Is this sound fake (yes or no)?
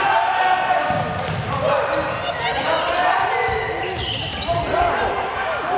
no